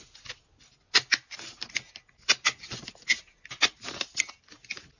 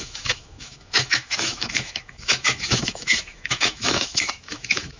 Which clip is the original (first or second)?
first